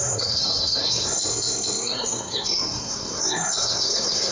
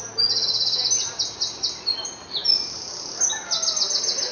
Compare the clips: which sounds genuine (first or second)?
second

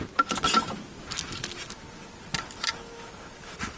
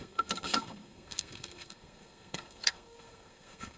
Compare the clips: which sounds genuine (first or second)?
first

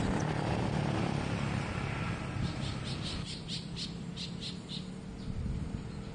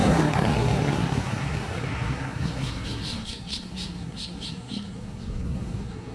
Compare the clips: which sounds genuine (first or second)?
first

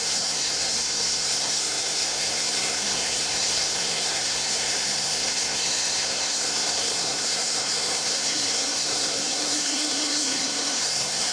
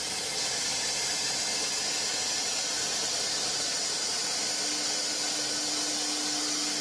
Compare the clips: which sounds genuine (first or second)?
second